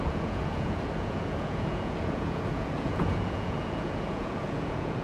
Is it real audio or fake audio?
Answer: fake